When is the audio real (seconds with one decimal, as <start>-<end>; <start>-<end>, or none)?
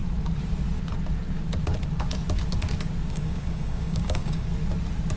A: 0.0-3.1; 4.5-5.2